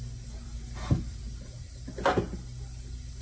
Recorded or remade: recorded